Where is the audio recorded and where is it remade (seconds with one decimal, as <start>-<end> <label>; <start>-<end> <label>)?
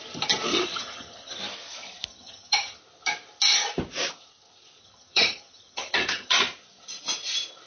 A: 0.0-0.5 recorded; 0.5-1.4 remade; 1.4-2.1 recorded; 2.1-2.8 remade; 2.8-4.8 recorded; 4.8-6.4 remade; 6.4-7.7 recorded